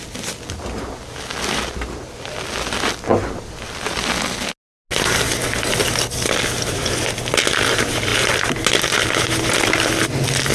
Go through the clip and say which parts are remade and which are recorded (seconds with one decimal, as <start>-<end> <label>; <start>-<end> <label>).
0.0-10.5 recorded

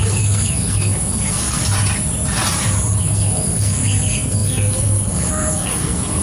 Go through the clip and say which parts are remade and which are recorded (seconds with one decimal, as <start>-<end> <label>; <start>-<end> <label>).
0.0-1.6 remade; 1.6-3.0 recorded; 3.0-6.2 remade

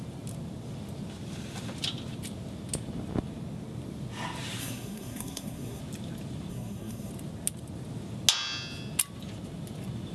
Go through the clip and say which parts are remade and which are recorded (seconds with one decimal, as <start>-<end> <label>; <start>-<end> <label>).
0.0-4.6 recorded; 4.6-5.8 remade; 5.8-6.5 recorded; 6.5-7.1 remade; 7.1-10.1 recorded

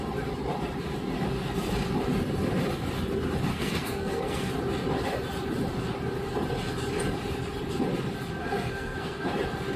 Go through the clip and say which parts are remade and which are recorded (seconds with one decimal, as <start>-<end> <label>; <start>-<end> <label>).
0.0-3.5 recorded; 3.5-4.5 remade; 4.5-8.4 recorded; 8.4-9.3 remade; 9.3-9.8 recorded

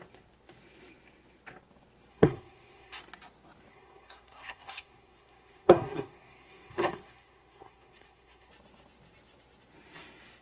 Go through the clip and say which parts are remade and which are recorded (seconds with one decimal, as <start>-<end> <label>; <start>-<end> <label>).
0.0-2.1 recorded; 2.1-3.0 remade; 3.0-3.7 recorded; 3.7-8.5 remade; 8.5-10.4 recorded

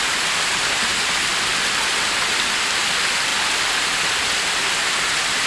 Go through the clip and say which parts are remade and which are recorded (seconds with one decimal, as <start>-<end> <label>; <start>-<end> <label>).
0.0-5.5 recorded

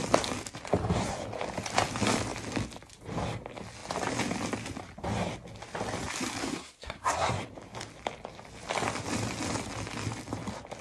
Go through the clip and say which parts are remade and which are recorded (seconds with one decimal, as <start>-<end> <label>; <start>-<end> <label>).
0.0-6.4 recorded; 6.4-7.4 remade; 7.4-10.8 recorded

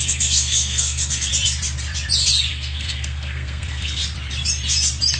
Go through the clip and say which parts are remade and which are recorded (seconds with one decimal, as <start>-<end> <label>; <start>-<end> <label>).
0.0-1.3 remade; 1.3-2.5 recorded; 2.5-4.0 remade; 4.0-5.2 recorded